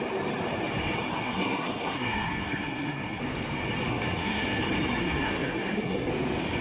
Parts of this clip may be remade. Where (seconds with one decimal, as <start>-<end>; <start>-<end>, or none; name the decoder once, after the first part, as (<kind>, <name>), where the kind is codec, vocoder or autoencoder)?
1.2-3.2 (codec, SNAC); 3.9-4.6; 5.0-6.1